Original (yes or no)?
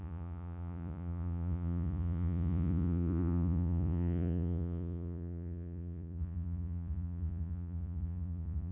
no